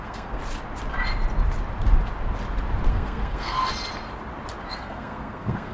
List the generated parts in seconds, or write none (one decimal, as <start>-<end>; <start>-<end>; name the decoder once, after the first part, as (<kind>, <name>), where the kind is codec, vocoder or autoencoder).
0.0-0.4 (codec, SNAC); 2.9-3.6; 4.7-5.7